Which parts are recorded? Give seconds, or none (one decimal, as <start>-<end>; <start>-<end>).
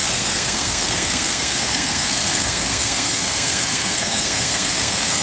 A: none